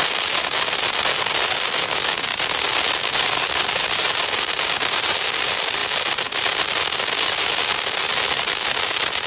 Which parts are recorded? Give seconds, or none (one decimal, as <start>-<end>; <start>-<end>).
0.0-9.3